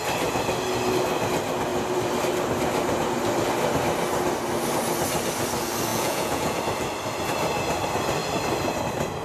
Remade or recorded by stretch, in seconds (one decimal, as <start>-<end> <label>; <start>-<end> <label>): 0.0-5.9 recorded; 5.9-6.6 remade; 6.6-9.2 recorded